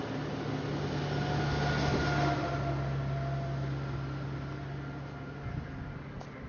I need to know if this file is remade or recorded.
recorded